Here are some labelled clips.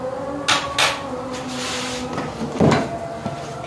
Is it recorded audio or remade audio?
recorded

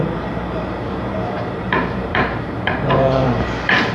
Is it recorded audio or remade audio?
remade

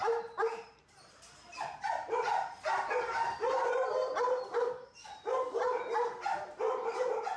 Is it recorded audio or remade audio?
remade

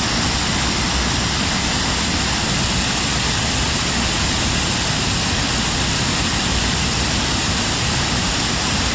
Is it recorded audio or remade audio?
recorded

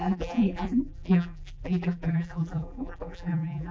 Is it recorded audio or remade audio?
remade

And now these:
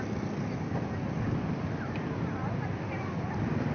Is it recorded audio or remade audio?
recorded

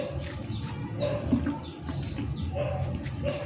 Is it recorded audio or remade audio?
recorded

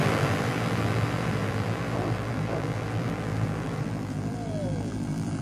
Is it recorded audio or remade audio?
remade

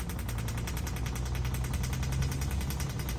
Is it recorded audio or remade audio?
recorded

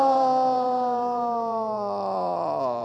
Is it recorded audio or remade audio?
remade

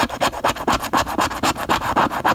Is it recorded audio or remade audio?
recorded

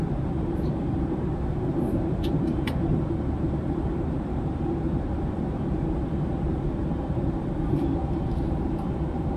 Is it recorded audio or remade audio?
remade